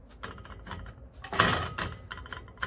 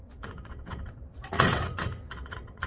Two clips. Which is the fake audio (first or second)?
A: second